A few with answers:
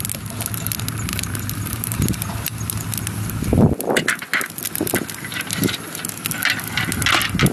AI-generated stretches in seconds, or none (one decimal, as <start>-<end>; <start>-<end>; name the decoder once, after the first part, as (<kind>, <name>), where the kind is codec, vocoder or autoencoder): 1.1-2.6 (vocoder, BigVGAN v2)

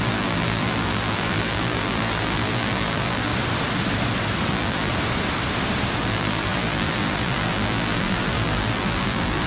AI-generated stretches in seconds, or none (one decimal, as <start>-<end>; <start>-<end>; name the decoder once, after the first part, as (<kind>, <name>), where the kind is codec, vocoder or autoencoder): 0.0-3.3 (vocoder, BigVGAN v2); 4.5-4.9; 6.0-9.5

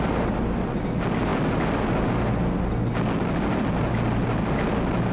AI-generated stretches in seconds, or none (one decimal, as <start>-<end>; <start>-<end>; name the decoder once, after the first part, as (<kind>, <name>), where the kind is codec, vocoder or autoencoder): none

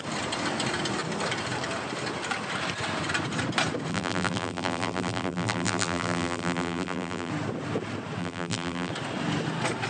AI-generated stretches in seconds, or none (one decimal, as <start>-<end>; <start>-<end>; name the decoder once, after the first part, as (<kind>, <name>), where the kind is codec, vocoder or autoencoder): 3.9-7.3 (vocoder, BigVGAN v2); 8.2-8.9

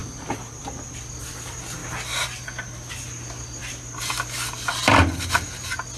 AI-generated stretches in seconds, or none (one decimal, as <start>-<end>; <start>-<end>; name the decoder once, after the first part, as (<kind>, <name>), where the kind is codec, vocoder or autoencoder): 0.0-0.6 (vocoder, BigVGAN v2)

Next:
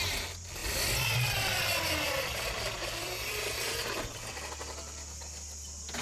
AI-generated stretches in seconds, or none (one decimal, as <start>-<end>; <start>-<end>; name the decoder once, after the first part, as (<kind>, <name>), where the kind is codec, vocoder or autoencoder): 0.6-4.2 (vocoder, BigVGAN v2)

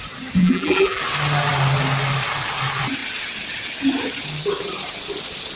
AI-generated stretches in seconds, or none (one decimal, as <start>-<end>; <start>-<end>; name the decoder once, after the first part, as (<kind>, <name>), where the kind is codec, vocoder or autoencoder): 0.4-1.0 (vocoder, BigVGAN v2)

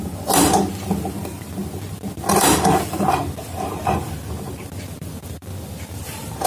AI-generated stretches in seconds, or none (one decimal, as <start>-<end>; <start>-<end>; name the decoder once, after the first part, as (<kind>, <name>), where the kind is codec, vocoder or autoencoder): none